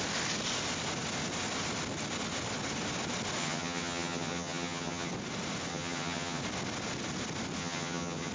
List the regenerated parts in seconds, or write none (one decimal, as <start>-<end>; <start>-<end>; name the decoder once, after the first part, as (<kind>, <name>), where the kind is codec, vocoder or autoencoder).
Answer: 3.4-5.1 (vocoder, HiFi-GAN); 5.7-6.4; 7.6-8.3